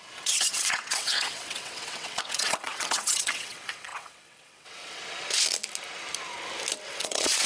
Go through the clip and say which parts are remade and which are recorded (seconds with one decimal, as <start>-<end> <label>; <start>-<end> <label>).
0.0-5.0 remade; 5.0-6.9 recorded; 6.9-7.5 remade

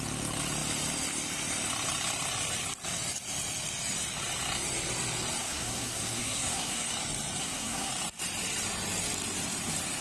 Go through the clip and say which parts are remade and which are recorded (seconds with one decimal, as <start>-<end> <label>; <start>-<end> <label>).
0.0-5.4 recorded; 5.4-6.9 remade; 6.9-7.4 recorded; 7.4-7.9 remade; 7.9-10.0 recorded

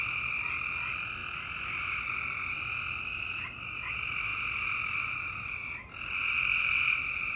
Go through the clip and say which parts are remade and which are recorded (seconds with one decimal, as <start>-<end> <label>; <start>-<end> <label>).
0.0-7.4 recorded

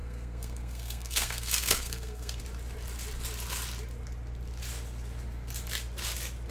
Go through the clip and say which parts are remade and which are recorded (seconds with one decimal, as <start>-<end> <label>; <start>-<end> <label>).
0.0-2.4 remade; 2.4-6.5 recorded

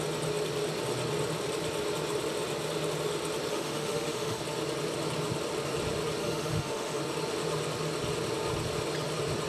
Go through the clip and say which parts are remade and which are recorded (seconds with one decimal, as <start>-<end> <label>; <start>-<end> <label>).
0.0-3.5 recorded; 3.5-4.4 remade; 4.4-6.2 recorded; 6.2-7.0 remade; 7.0-9.5 recorded

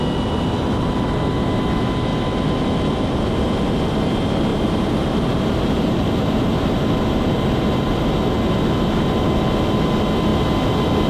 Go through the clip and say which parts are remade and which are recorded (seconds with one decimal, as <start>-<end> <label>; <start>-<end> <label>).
0.0-2.1 recorded; 2.1-2.6 remade; 2.6-4.5 recorded; 4.5-6.6 remade; 6.6-11.1 recorded

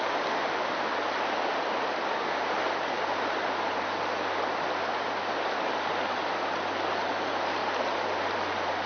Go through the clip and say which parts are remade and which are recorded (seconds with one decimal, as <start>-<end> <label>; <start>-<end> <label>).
0.0-7.6 recorded; 7.6-8.9 remade

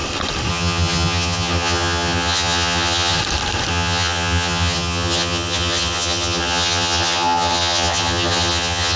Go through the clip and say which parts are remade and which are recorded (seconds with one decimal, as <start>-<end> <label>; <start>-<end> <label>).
0.0-0.5 recorded; 0.5-3.2 remade; 3.2-3.7 recorded; 3.7-9.0 remade